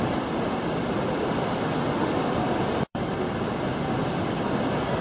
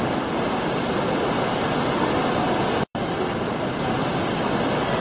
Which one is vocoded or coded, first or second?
first